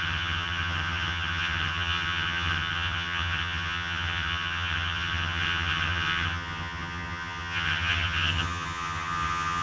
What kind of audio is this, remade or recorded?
remade